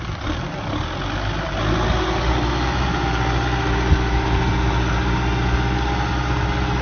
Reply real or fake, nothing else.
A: real